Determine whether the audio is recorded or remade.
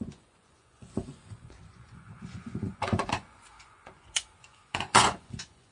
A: remade